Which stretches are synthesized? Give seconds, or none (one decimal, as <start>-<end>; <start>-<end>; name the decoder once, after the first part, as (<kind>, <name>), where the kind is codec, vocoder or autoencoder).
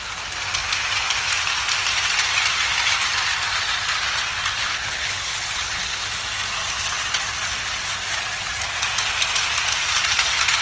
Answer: 4.7-6.1 (codec, HILCodec)